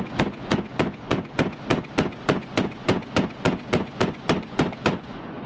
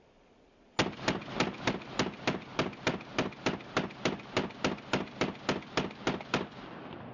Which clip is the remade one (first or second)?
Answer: first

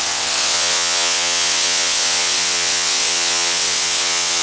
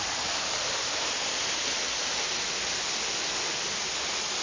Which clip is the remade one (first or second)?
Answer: first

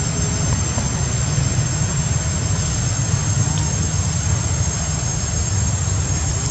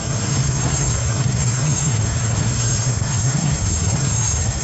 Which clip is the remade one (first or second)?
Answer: second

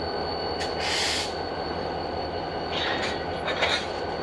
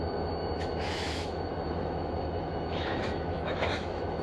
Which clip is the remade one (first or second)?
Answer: second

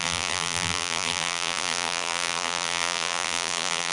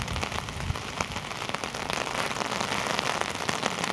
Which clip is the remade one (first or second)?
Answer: first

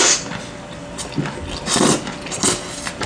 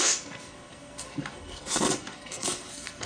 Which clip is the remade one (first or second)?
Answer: second